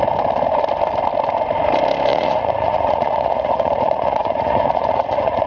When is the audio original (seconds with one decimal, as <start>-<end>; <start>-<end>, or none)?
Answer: 0.0-2.1